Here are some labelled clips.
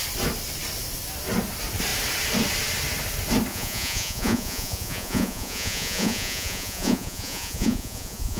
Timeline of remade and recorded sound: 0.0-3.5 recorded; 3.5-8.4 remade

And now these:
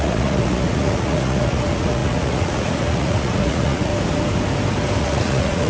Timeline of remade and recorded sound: 0.0-3.9 remade; 3.9-5.0 recorded; 5.0-5.7 remade

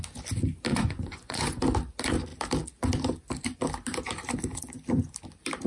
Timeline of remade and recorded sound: 0.0-0.7 recorded; 0.7-1.6 remade; 1.6-5.7 recorded

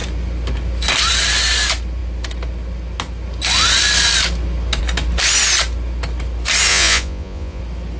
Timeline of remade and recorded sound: 0.0-6.7 recorded; 6.7-7.6 remade; 7.6-8.0 recorded

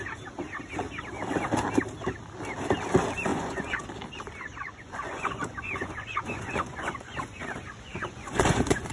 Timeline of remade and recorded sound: 0.0-3.3 recorded; 3.3-3.9 remade; 3.9-4.5 recorded; 4.5-8.9 remade

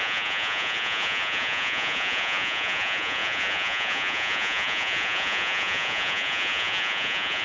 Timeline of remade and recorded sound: 0.0-7.4 remade

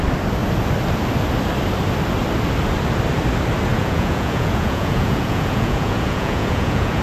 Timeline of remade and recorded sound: 0.0-3.7 recorded; 3.7-7.0 remade